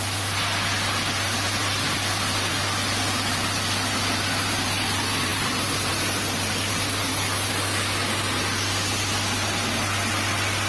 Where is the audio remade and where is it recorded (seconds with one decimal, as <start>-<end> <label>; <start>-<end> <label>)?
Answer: 0.0-10.7 recorded